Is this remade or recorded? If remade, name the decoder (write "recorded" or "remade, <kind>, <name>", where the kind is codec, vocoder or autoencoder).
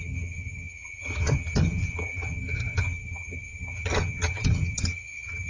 remade, vocoder, HiFi-GAN